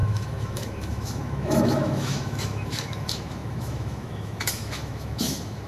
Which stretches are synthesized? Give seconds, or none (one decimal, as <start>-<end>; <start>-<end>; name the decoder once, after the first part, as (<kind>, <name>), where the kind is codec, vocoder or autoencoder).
0.0-5.7 (autoencoder, DAC-VAE)